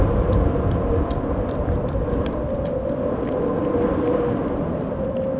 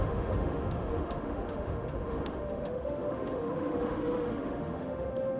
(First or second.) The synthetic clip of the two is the second